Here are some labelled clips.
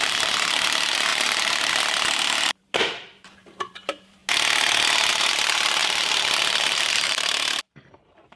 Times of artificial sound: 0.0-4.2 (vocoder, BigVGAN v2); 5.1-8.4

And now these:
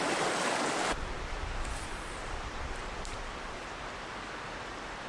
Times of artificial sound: 0.0-5.1 (vocoder, BigVGAN v2)

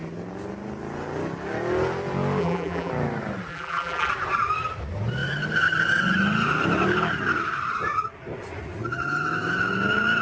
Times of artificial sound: 2.4-2.9 (vocoder, BigVGAN v2); 3.5-4.1

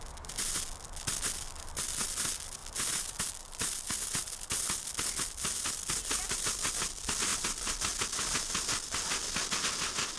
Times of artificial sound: none

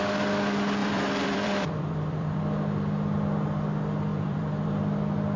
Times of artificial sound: 0.8-2.4 (vocoder, BigVGAN v2); 4.1-4.7

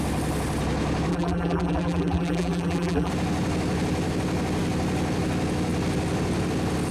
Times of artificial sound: 1.1-3.1 (vocoder, BigVGAN v2)